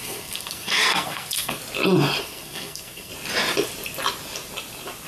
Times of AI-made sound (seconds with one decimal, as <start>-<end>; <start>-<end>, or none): 0.0-1.6; 2.2-3.1